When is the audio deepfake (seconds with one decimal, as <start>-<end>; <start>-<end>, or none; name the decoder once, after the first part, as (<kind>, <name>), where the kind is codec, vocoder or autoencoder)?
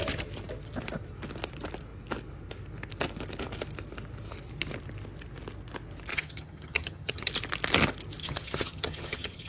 6.1-7.3 (vocoder, HiFi-GAN); 8.2-9.5